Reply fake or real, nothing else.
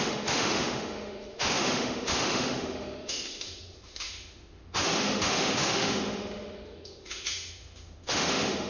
fake